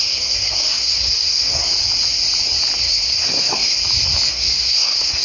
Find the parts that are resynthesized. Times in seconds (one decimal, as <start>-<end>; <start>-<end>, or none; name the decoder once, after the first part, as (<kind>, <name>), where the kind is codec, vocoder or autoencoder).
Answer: 0.0-1.7 (codec, SNAC); 2.8-3.8; 4.3-5.2